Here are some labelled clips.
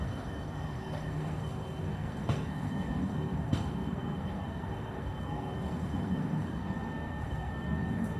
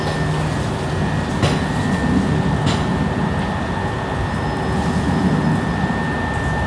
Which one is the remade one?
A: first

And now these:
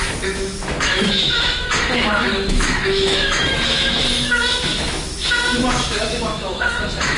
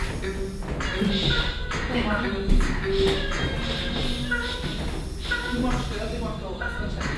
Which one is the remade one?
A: first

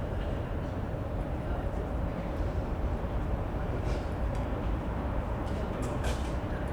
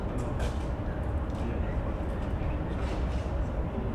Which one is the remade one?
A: first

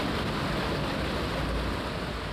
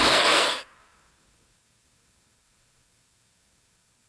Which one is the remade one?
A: second